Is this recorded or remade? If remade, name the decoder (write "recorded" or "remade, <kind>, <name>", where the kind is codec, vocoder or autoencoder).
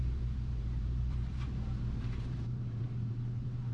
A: remade, vocoder, BigVGAN v2